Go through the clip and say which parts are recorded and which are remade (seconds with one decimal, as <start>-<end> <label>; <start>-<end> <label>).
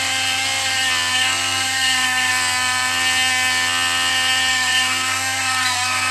0.0-1.1 recorded; 1.1-2.3 remade; 2.3-4.5 recorded; 4.5-6.1 remade